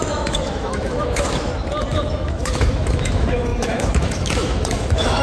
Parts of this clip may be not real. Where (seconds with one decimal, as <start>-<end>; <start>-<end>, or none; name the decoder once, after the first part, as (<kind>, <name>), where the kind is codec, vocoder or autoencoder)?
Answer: 0.0-1.5 (autoencoder, DAC-VAE); 2.1-5.2